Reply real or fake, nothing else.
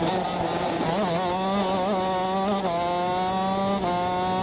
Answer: real